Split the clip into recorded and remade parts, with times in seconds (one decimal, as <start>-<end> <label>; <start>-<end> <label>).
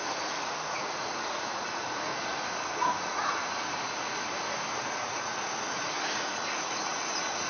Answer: 0.0-2.1 remade; 2.1-2.7 recorded; 2.7-4.2 remade; 4.2-4.8 recorded; 4.8-7.5 remade